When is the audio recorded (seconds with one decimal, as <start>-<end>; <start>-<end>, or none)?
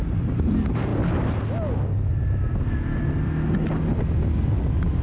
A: 0.0-5.0